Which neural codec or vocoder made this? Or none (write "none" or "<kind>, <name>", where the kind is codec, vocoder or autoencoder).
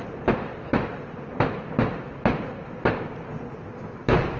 none